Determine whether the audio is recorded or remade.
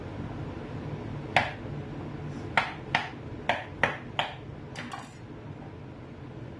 recorded